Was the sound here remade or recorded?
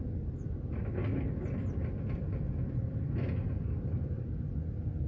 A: recorded